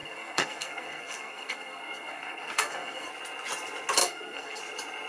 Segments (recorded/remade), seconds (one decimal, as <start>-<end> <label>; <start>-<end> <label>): 0.0-3.1 remade; 3.1-4.0 recorded; 4.0-4.6 remade; 4.6-5.1 recorded